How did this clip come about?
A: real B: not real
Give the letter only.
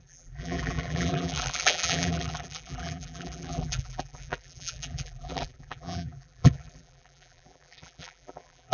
B